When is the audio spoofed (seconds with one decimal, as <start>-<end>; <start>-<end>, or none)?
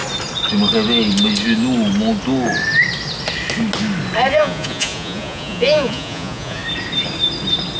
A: 4.3-6.6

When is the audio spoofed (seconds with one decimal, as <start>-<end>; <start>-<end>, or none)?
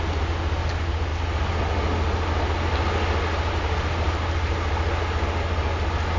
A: none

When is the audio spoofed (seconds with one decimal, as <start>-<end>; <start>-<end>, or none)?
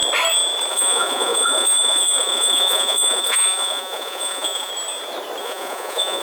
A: 0.7-4.7; 5.4-6.2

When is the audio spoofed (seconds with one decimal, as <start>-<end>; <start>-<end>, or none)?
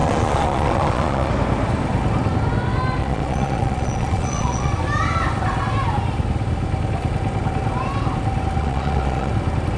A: 0.0-1.3; 3.0-4.7; 8.6-9.3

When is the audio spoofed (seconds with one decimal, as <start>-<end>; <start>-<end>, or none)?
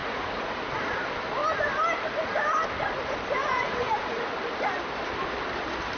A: 0.0-0.6; 3.4-4.3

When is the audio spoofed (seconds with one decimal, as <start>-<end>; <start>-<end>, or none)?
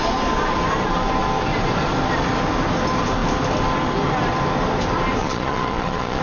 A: 5.2-6.2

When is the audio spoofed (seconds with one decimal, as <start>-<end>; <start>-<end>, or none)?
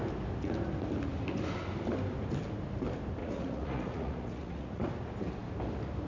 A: 3.2-4.9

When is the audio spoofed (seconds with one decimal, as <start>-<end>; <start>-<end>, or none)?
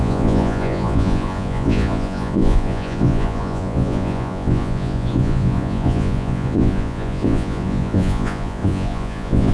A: 0.0-9.5